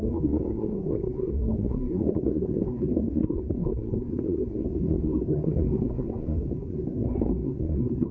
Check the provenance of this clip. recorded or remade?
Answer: remade